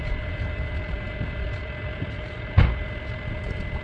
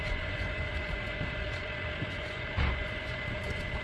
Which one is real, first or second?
first